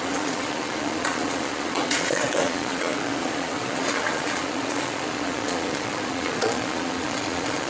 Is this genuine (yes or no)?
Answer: no